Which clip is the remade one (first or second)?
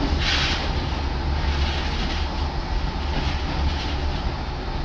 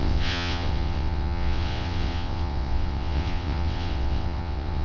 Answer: second